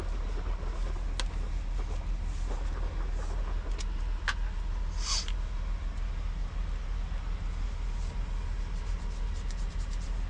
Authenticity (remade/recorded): recorded